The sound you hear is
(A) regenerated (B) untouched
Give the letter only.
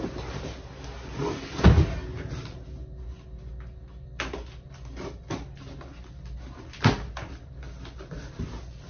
B